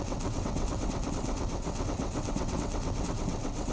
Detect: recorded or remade remade